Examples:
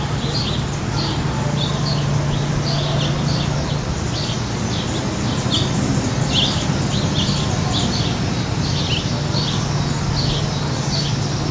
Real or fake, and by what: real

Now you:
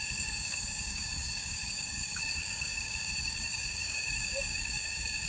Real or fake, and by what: fake, codec, DAC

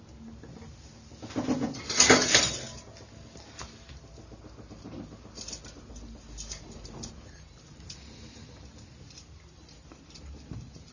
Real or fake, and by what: real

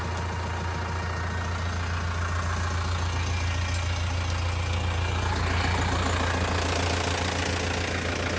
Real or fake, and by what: real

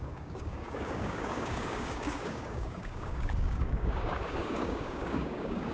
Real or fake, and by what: fake, codec, DAC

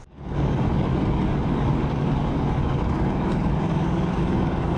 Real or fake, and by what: fake, codec, DAC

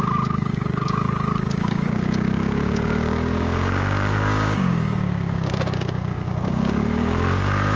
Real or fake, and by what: fake, codec, DAC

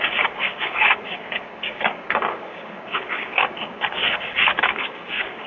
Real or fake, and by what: fake, codec, DAC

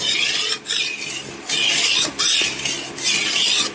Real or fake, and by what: real